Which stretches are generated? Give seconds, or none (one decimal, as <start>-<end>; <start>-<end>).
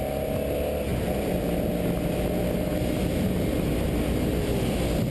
none